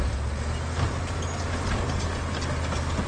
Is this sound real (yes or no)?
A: yes